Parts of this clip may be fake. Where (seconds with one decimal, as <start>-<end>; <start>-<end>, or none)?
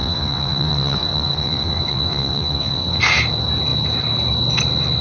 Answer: 0.0-3.0